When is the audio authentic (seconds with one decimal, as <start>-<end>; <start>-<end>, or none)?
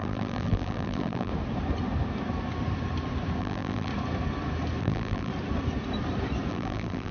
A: 1.3-3.4; 3.9-4.8; 5.3-6.5